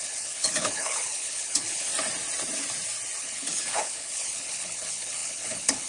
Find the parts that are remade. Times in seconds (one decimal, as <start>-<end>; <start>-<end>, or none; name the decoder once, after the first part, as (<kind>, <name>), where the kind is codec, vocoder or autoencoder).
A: 0.0-1.9 (codec, HILCodec); 3.2-5.9